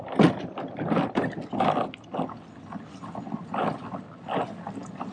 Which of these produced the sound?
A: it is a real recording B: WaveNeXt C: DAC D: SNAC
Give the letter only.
A